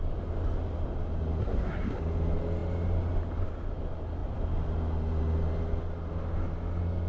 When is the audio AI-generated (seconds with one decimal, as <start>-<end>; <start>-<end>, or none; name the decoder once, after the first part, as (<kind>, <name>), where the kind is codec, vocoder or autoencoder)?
1.4-2.0 (codec, SNAC)